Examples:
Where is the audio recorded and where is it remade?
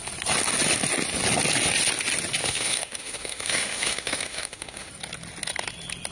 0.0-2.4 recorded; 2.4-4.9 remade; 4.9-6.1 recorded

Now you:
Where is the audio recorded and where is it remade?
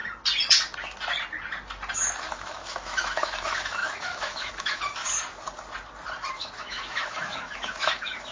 0.0-2.3 recorded; 2.3-5.0 remade; 5.0-6.3 recorded; 6.3-8.3 remade